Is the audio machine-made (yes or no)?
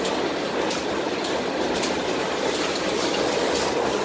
no